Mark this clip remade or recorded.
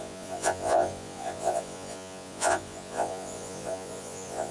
remade